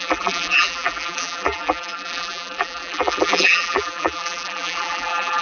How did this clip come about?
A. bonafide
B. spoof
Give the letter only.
B